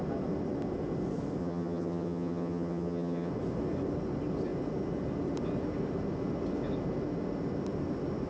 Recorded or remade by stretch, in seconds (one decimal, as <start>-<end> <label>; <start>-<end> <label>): 0.0-1.4 recorded; 1.4-3.3 remade; 3.3-8.3 recorded